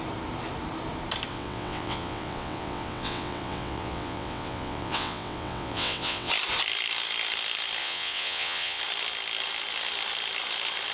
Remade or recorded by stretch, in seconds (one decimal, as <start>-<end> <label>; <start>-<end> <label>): 0.0-1.3 recorded; 1.3-6.3 remade; 6.3-7.8 recorded; 7.8-8.8 remade; 8.8-10.9 recorded

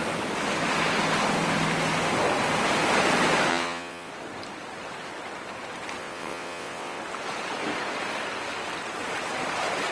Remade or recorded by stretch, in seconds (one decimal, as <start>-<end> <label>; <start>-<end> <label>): 0.0-3.5 recorded; 3.5-4.1 remade; 4.1-6.0 recorded; 6.0-7.0 remade; 7.0-9.9 recorded

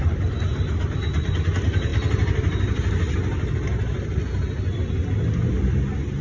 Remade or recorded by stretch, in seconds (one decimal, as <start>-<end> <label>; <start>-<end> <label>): 0.0-6.2 recorded

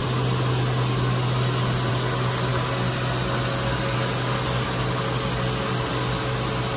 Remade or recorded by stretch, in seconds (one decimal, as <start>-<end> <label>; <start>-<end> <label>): 0.0-6.8 recorded

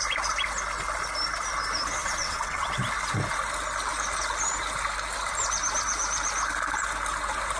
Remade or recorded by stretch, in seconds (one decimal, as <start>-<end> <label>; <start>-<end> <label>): 0.0-2.0 recorded; 2.0-2.7 remade; 2.7-7.6 recorded

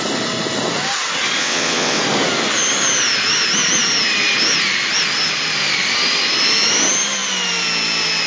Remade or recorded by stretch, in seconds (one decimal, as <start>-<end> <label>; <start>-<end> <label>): 0.0-1.4 recorded; 1.4-2.0 remade; 2.0-8.3 recorded

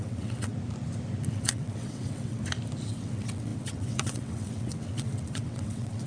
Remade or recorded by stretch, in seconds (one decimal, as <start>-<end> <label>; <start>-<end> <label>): 0.0-0.5 remade; 0.5-1.3 recorded; 1.3-2.4 remade; 2.4-2.9 recorded; 2.9-6.1 remade